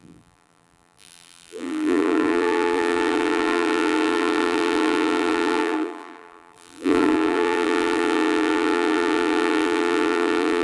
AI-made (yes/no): yes